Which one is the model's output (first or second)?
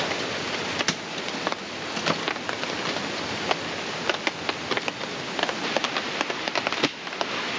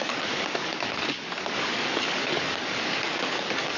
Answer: second